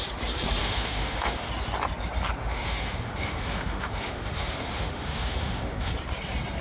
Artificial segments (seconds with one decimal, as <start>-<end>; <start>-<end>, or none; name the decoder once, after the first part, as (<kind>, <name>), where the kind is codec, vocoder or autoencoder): 0.6-1.5 (autoencoder, DAC-VAE); 2.4-5.9